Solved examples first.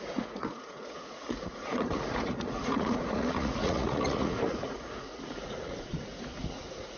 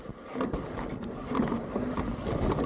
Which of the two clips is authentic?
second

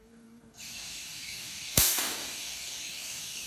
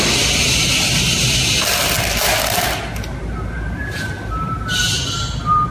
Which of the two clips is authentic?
second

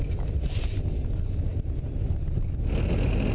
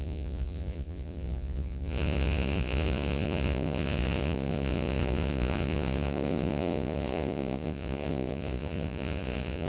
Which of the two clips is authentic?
first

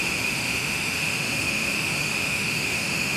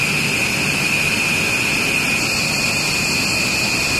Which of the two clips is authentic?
second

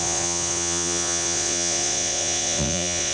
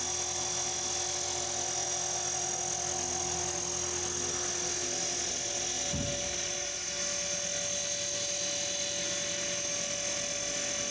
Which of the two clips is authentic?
second